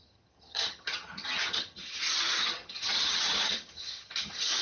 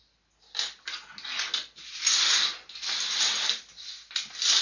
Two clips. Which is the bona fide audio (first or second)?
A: second